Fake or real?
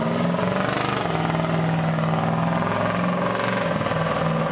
real